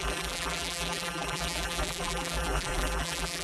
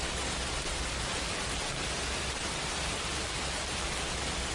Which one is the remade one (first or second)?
first